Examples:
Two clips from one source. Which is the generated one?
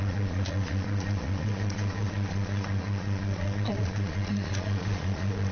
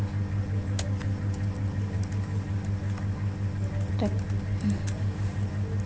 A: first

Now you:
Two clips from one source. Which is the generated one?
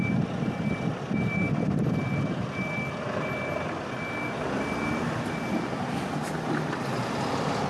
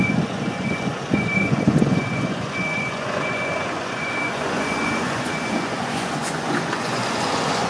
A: second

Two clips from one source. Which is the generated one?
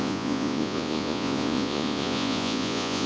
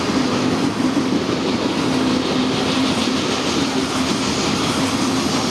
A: first